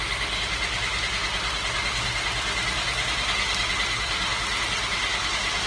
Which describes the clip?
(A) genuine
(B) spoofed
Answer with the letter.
A